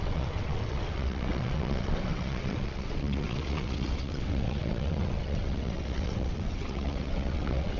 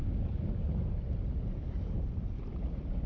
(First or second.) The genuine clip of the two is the second